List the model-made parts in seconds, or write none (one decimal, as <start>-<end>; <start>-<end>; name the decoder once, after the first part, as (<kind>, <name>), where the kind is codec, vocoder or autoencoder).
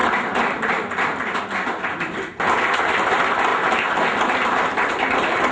none